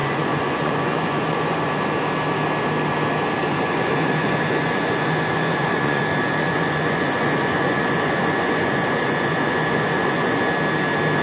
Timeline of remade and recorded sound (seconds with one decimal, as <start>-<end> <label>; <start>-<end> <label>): 0.0-1.7 remade; 1.7-3.4 recorded; 3.4-6.0 remade; 6.0-6.4 recorded; 6.4-10.4 remade; 10.4-11.2 recorded